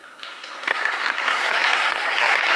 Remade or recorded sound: remade